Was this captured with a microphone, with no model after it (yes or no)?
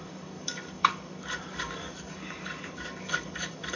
no